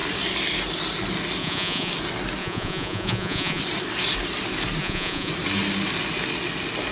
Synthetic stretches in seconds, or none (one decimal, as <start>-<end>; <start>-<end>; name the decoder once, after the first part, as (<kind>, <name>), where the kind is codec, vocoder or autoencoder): 1.4-1.9 (vocoder, Vocos); 2.4-3.6; 4.8-5.3